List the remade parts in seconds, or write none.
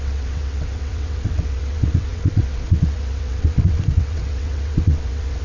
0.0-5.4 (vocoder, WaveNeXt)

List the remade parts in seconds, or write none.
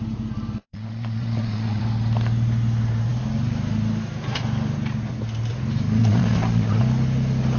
0.6-1.8 (vocoder, Vocos); 6.0-6.8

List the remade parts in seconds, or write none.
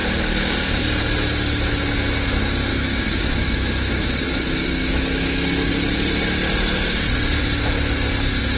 2.7-5.7 (autoencoder, DAC-VAE)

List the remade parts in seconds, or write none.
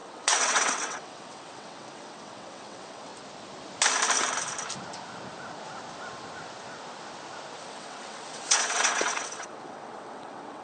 0.0-3.1 (vocoder, WaveNeXt); 7.6-10.6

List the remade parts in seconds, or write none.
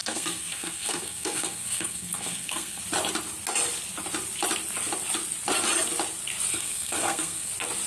0.0-2.8 (codec, SNAC); 6.5-7.5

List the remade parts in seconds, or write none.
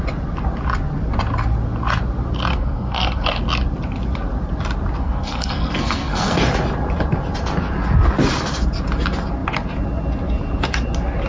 2.5-3.4 (codec, SNAC); 5.0-6.4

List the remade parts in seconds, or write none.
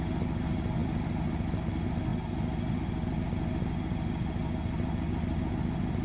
0.8-1.5 (vocoder, BigVGAN v2)